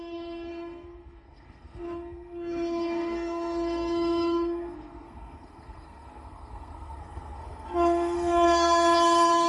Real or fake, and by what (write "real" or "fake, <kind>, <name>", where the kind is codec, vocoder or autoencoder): fake, codec, SNAC